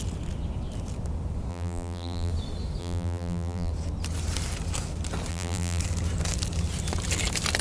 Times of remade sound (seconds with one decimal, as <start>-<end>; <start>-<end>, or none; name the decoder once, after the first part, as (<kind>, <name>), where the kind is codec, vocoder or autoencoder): 1.5-2.3 (vocoder, BigVGAN v2); 2.8-3.7; 5.3-5.8